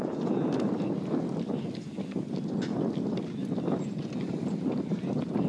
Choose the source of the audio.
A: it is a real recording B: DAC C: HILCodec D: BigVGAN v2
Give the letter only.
A